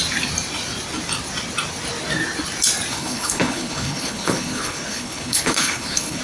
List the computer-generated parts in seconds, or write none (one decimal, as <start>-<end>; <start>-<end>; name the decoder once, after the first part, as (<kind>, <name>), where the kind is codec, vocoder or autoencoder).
2.9-6.2 (codec, HILCodec)